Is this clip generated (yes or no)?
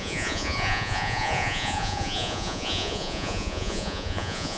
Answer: yes